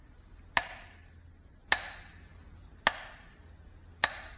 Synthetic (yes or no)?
no